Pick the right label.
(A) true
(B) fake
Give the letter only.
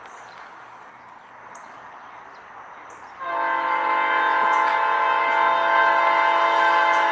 A